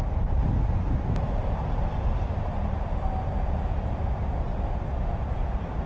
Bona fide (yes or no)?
yes